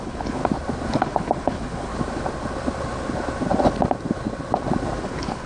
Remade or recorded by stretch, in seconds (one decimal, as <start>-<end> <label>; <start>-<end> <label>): 0.0-0.4 remade; 0.4-0.9 recorded; 0.9-1.9 remade; 1.9-5.0 recorded; 5.0-5.5 remade